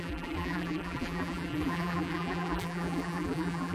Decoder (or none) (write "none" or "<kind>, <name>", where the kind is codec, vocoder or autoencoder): vocoder, BigVGAN v2